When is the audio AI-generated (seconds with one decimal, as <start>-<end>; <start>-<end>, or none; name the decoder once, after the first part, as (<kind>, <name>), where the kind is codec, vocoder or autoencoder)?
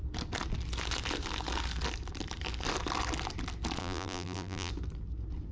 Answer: 3.8-4.7 (vocoder, BigVGAN v2)